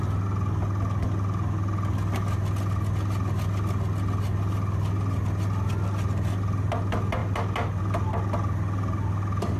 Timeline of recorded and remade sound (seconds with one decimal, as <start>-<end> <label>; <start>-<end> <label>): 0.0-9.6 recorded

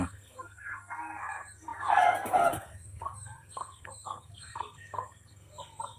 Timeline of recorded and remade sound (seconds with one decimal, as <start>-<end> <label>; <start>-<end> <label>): 0.0-6.0 remade

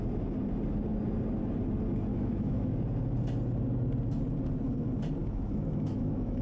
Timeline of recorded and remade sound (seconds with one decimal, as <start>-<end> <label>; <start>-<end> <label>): 0.0-2.1 recorded; 2.1-2.7 remade; 2.7-5.2 recorded; 5.2-6.4 remade